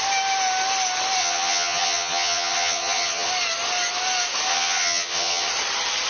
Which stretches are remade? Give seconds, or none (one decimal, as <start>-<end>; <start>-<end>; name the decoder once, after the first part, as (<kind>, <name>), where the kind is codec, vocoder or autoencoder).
1.2-3.3 (vocoder, HiFi-GAN); 4.5-5.5